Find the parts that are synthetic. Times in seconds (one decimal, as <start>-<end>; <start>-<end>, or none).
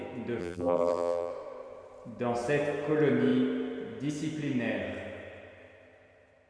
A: 0.4-1.3